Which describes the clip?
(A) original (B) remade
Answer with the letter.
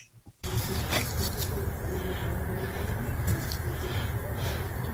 B